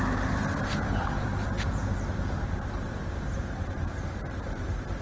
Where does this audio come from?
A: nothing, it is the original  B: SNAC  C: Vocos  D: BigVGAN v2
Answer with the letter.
D